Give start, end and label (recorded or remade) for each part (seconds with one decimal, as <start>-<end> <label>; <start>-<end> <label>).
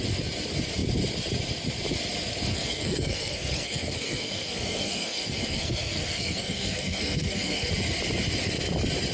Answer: 0.0-2.5 recorded; 2.5-7.7 remade; 7.7-9.1 recorded